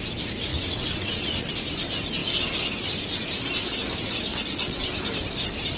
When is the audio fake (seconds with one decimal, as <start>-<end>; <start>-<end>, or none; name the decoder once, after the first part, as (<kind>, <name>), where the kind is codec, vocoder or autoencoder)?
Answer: 0.5-1.5 (vocoder, WaveNeXt); 4.3-4.9

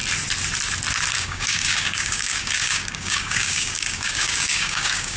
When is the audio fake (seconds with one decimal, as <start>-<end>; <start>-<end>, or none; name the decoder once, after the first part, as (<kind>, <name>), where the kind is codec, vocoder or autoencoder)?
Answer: 1.1-5.2 (codec, DAC)

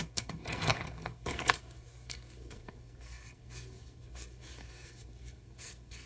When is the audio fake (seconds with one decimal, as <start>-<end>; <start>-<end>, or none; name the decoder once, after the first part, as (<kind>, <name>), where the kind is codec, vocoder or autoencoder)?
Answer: 0.0-6.1 (codec, SNAC)

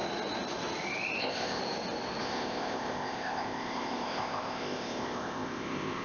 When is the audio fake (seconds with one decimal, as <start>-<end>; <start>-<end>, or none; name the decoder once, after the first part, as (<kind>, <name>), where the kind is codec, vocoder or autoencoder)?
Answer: 1.2-1.6 (codec, ZipCodec); 2.2-6.0

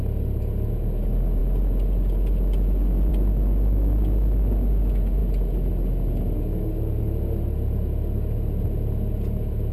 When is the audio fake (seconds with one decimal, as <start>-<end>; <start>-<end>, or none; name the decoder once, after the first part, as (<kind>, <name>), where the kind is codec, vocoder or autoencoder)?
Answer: none

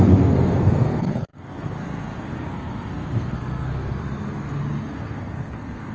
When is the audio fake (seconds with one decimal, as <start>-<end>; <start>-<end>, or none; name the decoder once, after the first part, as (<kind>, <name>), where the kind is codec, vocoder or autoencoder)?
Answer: 0.0-4.0 (codec, SNAC); 4.9-5.9